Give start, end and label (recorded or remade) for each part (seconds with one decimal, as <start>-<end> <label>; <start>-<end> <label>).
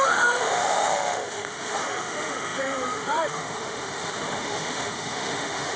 0.0-5.8 remade